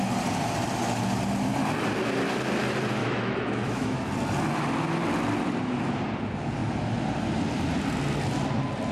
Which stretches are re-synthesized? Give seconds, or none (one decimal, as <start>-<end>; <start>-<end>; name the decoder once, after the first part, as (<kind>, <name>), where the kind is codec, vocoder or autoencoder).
3.0-4.1 (autoencoder, DAC-VAE)